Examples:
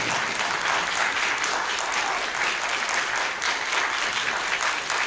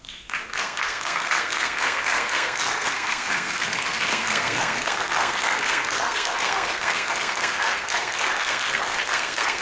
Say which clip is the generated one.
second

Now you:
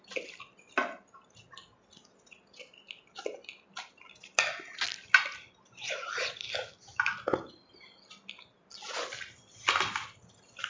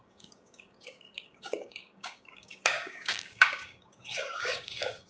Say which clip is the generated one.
second